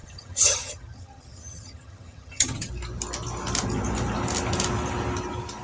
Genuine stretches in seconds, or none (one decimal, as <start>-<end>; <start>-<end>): 2.7-5.6